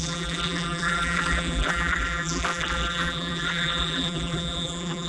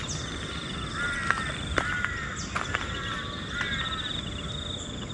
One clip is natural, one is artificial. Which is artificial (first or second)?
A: first